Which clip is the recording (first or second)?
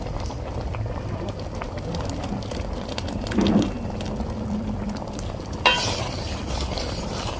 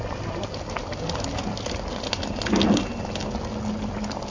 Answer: second